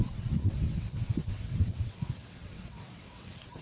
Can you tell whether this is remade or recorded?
remade